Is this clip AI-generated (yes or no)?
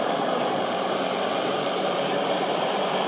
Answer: yes